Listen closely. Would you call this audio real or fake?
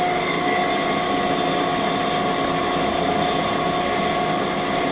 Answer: real